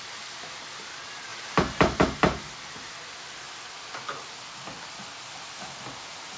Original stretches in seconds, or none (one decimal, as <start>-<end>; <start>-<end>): 0.0-6.4